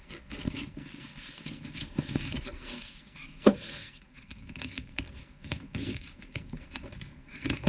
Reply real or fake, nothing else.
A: fake